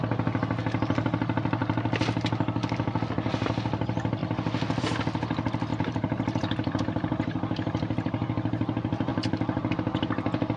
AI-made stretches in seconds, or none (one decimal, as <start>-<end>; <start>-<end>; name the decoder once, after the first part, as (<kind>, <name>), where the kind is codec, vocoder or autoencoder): 5.7-6.8 (vocoder, BigVGAN v2); 9.1-9.7